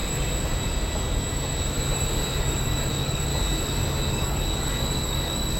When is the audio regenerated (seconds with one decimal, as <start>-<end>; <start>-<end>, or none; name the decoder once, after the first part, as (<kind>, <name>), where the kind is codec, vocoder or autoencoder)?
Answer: 2.4-3.3 (codec, DAC); 4.1-5.6